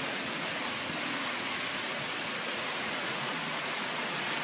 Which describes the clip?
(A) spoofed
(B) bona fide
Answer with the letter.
A